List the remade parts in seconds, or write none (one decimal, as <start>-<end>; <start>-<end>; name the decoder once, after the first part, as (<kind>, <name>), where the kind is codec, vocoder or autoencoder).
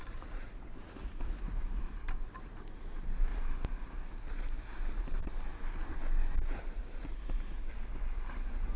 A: 0.0-3.3 (vocoder, BigVGAN v2); 5.0-5.5; 6.3-6.8; 7.9-8.8